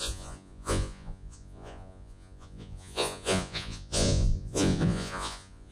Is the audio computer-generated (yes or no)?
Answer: yes